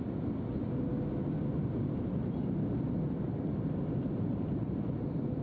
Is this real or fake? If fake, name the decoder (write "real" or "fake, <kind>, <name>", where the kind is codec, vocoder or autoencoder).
real